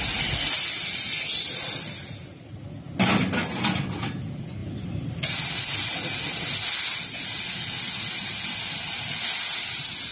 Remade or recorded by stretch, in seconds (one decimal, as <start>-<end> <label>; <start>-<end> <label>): 0.0-10.1 recorded